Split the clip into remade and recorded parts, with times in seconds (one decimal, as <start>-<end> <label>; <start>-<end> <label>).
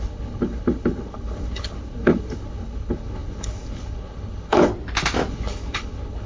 0.0-4.7 remade; 4.7-5.3 recorded; 5.3-6.3 remade